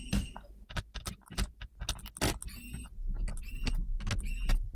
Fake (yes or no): no